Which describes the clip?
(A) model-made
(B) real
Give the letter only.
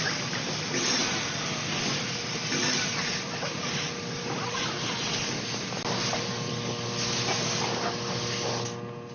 B